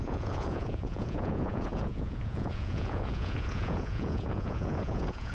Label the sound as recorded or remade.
remade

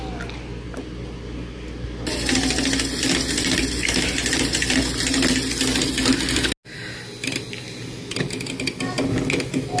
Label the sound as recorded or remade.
recorded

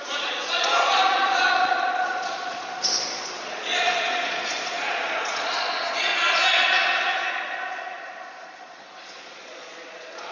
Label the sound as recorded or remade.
remade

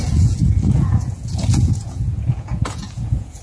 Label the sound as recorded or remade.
remade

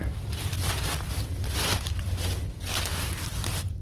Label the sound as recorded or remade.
recorded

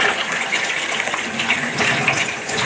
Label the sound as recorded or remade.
remade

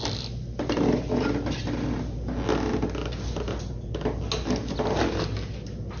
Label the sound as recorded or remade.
recorded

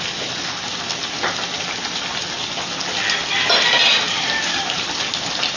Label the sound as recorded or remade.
recorded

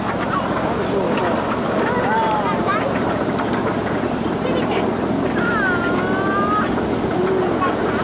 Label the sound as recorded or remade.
recorded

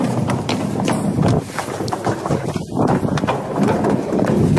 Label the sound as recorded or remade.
recorded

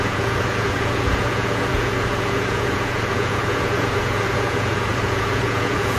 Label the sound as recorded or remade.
remade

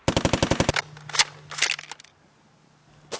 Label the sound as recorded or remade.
recorded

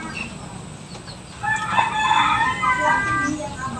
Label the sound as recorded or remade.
recorded